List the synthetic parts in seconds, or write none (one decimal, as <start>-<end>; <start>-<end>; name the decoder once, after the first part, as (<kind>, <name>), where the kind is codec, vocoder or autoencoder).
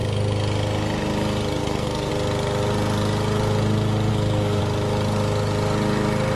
1.6-2.1 (codec, SNAC); 4.1-4.6